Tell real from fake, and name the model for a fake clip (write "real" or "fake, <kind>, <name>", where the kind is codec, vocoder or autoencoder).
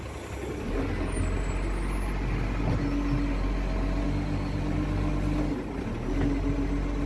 real